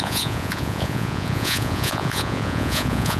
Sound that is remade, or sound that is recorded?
remade